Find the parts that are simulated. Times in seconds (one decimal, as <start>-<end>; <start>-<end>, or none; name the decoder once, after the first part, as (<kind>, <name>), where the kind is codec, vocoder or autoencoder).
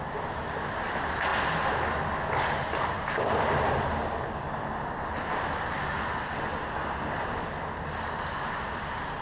none